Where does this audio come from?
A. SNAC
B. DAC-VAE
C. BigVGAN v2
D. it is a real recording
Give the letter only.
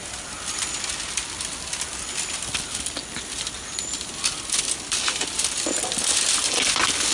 D